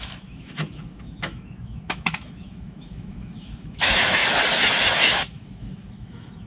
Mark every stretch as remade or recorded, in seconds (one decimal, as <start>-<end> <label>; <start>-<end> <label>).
0.0-4.2 remade; 4.2-4.9 recorded; 4.9-6.5 remade

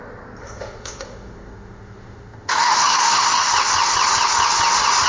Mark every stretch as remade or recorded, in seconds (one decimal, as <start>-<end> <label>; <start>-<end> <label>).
0.0-0.4 recorded; 0.4-3.5 remade; 3.5-5.1 recorded

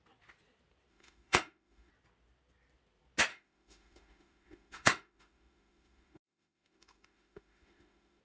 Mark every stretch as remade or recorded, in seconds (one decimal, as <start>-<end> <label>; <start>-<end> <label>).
0.0-0.9 recorded; 0.9-1.9 remade; 1.9-3.3 recorded; 3.3-8.2 remade

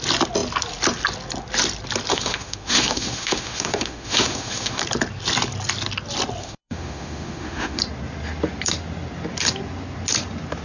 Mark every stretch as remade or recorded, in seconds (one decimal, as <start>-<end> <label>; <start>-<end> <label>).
0.0-2.1 recorded; 2.1-4.8 remade; 4.8-6.4 recorded; 6.4-7.8 remade; 7.8-10.6 recorded